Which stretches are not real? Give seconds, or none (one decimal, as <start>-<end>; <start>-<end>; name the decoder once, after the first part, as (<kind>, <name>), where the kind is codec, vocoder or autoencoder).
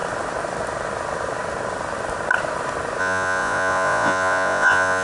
3.0-5.0 (vocoder, Vocos)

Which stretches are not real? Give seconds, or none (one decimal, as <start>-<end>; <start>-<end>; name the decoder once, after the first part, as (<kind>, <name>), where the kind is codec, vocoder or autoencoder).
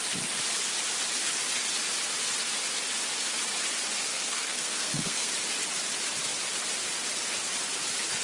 4.1-5.3 (codec, SNAC)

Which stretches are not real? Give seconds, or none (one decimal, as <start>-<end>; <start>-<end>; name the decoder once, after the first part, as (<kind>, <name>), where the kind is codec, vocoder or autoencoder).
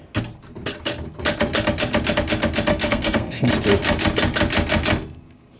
2.7-3.5 (codec, SNAC)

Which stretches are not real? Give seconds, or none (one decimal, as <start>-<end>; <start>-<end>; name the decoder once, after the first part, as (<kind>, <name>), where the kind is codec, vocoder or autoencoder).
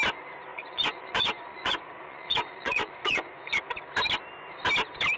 0.5-3.6 (vocoder, Vocos)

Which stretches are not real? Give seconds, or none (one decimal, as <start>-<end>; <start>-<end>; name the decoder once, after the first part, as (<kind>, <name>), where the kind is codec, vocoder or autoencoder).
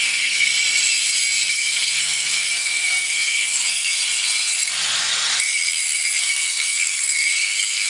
0.0-0.5 (codec, SNAC); 1.5-4.0; 6.2-7.9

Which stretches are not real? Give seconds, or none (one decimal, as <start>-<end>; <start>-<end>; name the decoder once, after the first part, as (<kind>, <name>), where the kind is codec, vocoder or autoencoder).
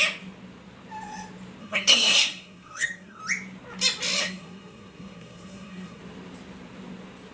1.6-3.2 (codec, SNAC); 4.2-6.0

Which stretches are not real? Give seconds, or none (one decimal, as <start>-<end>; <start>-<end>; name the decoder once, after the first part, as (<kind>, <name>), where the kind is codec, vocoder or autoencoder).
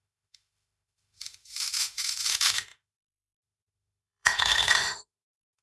0.0-5.6 (autoencoder, DAC-VAE)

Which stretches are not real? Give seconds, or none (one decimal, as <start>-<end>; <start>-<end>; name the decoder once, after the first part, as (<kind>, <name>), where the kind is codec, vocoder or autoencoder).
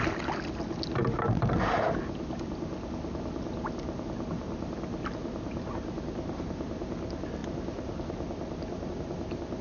none